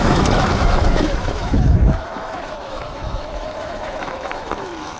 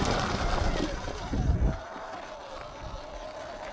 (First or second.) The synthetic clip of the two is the first